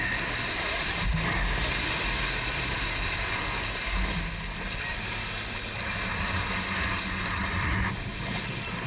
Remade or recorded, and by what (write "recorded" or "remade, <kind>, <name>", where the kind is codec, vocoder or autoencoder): recorded